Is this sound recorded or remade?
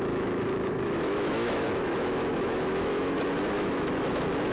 remade